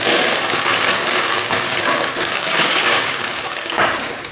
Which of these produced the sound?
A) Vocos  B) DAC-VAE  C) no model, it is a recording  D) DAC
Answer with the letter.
D